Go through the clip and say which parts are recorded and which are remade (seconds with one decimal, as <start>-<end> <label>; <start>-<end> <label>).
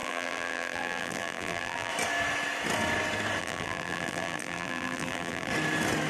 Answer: 0.0-1.9 remade; 1.9-3.4 recorded; 3.4-5.5 remade; 5.5-6.1 recorded